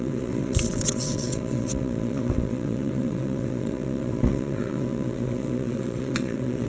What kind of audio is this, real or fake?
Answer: fake